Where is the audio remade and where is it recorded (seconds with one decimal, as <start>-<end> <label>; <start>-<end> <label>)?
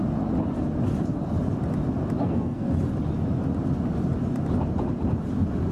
0.0-2.2 recorded; 2.2-2.7 remade; 2.7-5.7 recorded